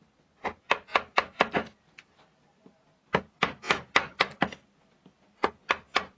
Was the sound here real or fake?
real